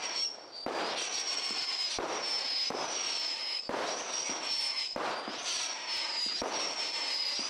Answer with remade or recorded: recorded